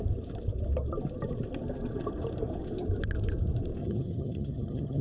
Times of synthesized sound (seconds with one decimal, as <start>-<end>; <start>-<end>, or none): 3.8-5.0